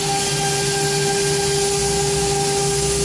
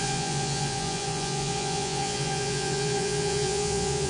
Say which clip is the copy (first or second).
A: second